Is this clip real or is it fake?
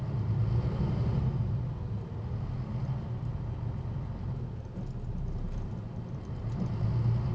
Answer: real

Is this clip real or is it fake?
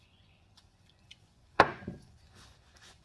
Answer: fake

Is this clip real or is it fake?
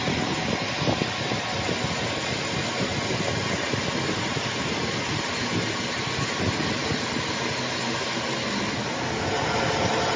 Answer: real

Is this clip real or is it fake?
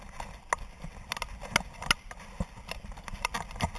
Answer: real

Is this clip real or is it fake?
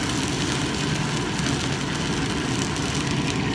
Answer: real